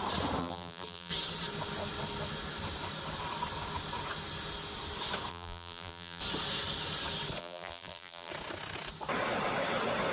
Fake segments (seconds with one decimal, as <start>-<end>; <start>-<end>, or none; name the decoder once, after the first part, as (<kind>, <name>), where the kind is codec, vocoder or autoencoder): 0.4-1.1 (vocoder, BigVGAN v2); 5.3-6.2; 7.4-8.3